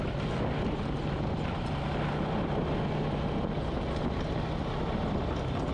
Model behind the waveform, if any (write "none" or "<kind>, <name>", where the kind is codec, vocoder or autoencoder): none